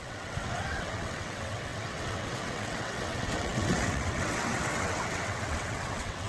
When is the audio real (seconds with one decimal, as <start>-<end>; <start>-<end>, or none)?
none